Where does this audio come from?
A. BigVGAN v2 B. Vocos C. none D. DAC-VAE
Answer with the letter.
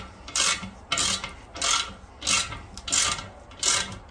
C